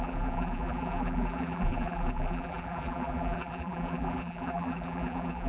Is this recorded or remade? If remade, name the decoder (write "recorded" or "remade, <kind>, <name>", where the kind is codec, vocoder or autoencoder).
remade, vocoder, BigVGAN v2